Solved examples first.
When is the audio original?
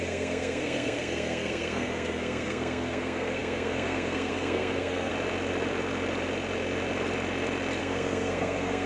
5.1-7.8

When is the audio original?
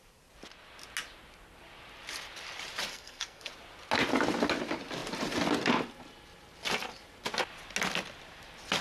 0.0-2.9; 3.5-8.8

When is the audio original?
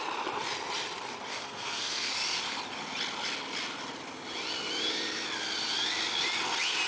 0.0-1.3; 2.1-6.9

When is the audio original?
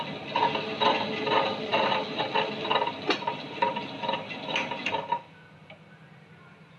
0.0-6.8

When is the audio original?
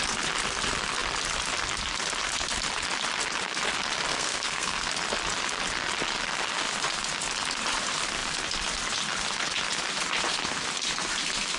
0.0-4.1; 4.9-11.6